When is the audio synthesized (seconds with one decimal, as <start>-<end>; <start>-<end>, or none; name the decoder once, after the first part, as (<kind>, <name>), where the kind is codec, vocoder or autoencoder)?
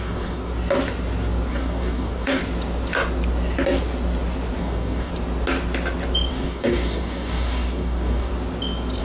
0.0-0.5 (codec, DAC); 1.5-2.4; 4.6-5.1; 6.3-8.3